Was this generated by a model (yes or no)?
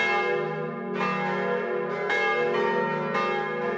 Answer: no